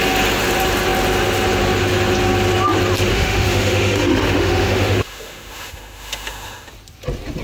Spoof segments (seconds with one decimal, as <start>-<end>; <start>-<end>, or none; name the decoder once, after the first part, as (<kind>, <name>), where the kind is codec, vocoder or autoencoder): 3.1-6.7 (autoencoder, DAC-VAE)